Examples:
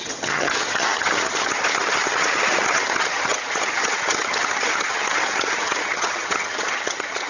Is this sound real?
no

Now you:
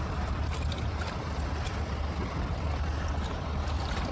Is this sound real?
no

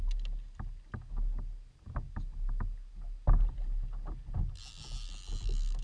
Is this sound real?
yes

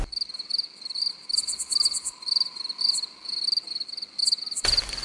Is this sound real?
yes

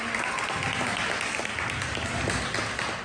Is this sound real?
yes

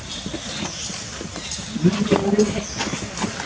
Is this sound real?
yes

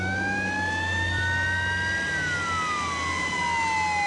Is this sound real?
yes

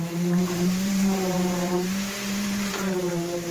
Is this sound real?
no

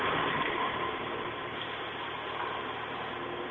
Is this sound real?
yes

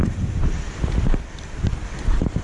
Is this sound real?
yes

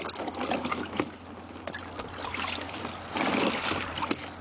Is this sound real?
yes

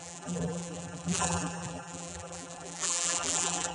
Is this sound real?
no